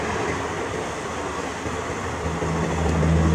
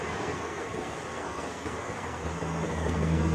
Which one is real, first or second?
first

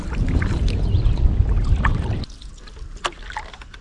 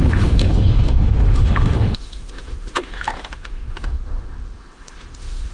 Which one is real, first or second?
first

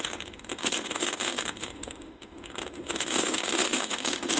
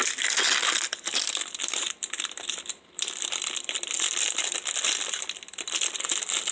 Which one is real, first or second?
second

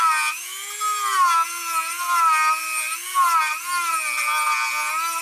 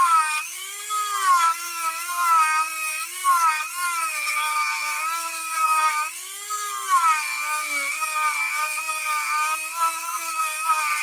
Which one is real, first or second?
first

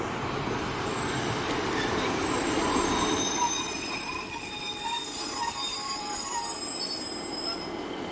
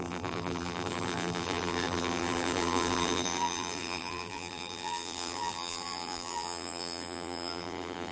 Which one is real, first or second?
first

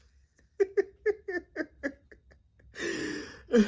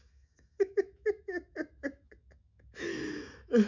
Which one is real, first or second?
first